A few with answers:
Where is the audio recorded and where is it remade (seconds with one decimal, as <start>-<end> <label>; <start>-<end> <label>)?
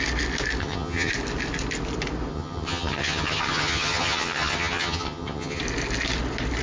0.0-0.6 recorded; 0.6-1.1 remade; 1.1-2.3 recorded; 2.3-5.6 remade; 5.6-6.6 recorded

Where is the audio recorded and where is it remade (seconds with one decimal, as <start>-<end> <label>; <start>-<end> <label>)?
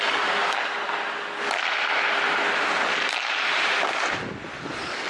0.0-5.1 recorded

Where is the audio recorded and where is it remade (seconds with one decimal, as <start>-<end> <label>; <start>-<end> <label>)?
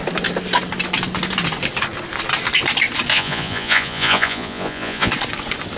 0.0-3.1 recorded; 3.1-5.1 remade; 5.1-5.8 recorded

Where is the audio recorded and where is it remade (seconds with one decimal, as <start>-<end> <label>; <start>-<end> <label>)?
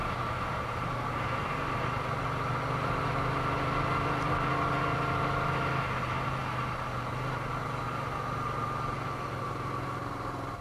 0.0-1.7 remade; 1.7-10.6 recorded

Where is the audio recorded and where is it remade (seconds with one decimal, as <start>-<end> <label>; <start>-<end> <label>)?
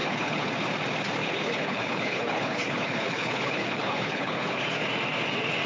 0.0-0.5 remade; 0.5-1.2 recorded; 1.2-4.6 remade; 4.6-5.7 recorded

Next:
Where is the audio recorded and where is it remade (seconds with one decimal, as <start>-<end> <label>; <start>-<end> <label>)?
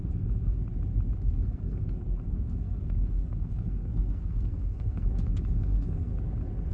0.0-0.6 remade; 0.6-1.2 recorded; 1.2-6.1 remade; 6.1-6.7 recorded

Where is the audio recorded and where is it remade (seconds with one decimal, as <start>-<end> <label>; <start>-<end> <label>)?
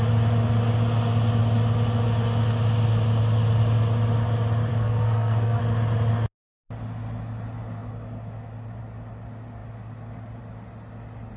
0.0-4.7 recorded; 4.7-5.6 remade; 5.6-11.4 recorded